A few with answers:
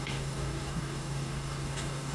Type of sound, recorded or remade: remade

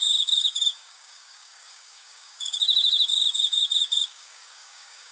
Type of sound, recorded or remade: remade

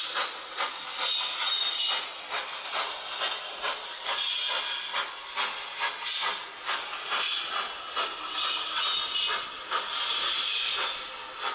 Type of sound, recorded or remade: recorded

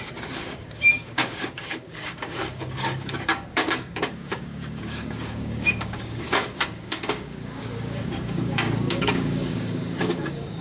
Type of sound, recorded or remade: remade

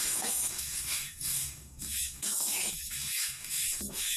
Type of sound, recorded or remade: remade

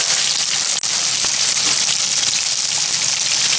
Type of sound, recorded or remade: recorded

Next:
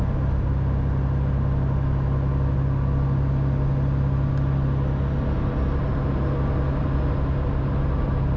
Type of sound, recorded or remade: recorded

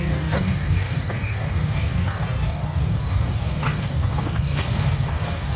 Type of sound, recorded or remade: remade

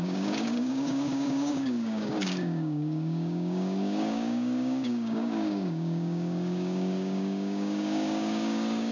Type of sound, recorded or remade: remade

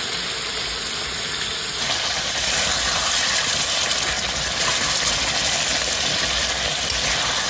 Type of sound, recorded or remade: recorded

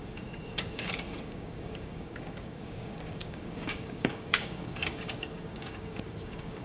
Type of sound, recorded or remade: remade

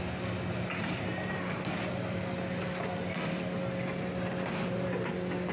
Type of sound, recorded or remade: recorded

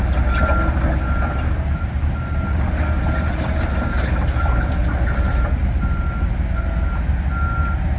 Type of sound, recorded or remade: recorded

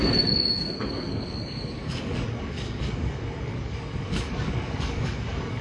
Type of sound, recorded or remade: remade